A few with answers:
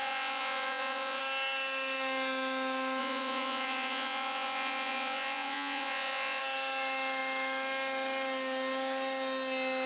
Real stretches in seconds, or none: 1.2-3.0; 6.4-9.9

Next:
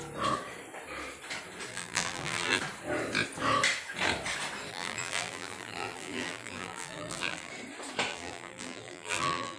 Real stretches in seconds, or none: 0.0-1.7; 2.6-4.7; 7.5-8.1

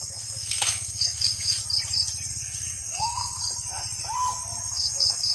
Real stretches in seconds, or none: 1.6-2.3; 3.4-4.7

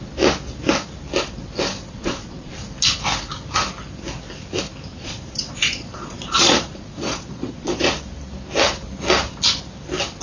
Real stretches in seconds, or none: 0.0-1.8; 2.5-4.9; 7.8-10.2

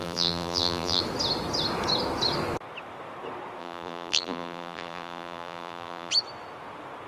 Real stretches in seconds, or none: 1.0-3.6; 6.1-7.1

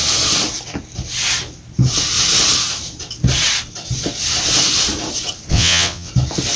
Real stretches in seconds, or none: 0.0-5.5; 6.1-6.6